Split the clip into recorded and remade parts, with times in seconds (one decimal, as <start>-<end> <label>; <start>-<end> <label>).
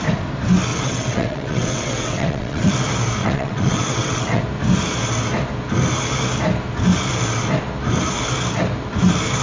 0.0-0.7 recorded; 0.7-2.7 remade; 2.7-3.2 recorded; 3.2-4.4 remade; 4.4-9.4 recorded